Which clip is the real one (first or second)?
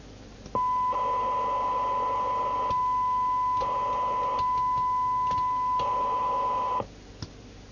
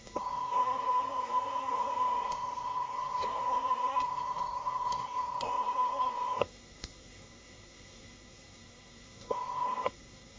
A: first